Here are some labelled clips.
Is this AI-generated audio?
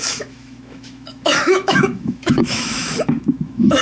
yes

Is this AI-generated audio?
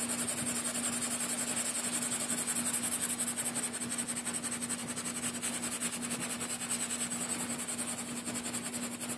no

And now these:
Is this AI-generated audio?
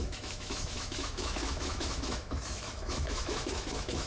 yes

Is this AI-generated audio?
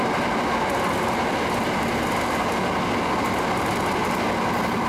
no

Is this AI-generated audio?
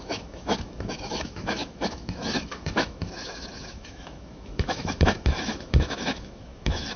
yes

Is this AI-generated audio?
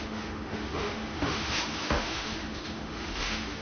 yes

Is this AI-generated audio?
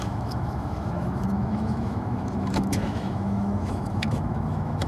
yes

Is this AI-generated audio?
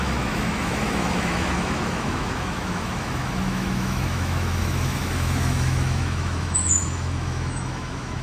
yes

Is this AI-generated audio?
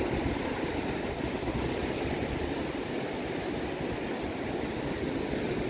no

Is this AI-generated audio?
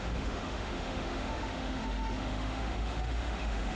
yes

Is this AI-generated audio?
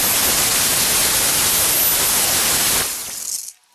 no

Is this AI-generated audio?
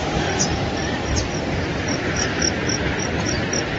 no